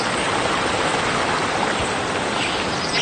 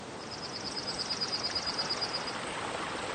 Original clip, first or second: first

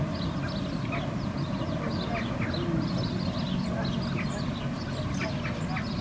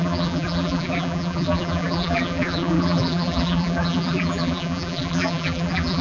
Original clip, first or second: first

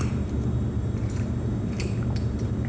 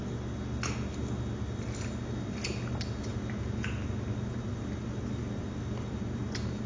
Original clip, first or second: second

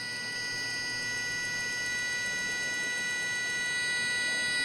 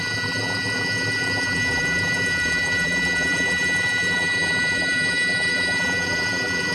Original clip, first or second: first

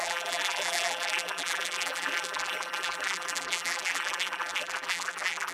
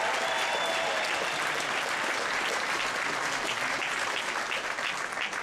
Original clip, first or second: second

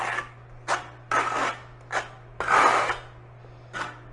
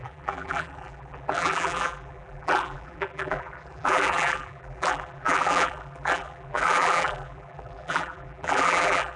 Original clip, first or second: first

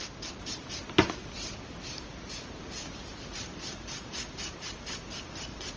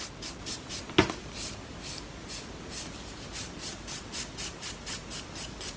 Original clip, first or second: second